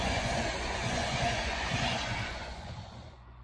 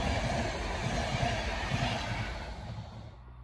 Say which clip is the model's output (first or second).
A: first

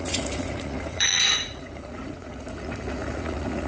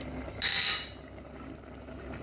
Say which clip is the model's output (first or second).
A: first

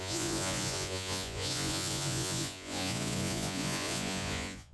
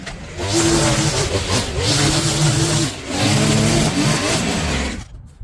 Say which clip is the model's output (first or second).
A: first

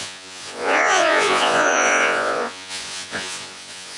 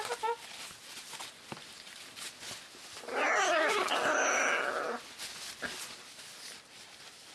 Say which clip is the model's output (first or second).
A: first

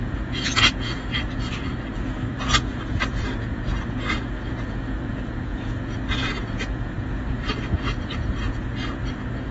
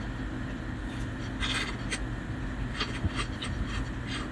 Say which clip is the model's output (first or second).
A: first